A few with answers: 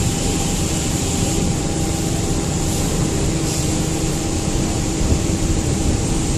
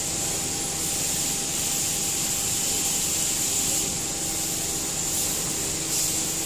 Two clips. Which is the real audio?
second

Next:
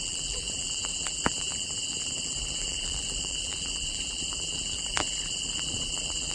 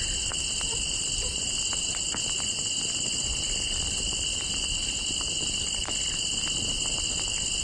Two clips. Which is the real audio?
second